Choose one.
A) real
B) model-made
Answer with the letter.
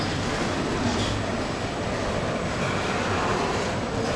B